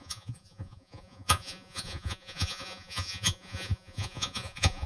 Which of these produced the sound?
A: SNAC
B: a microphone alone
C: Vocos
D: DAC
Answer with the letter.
C